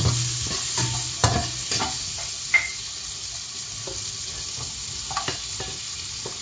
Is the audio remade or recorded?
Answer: recorded